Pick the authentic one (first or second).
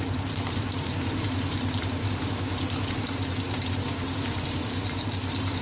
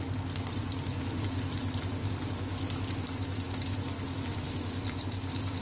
second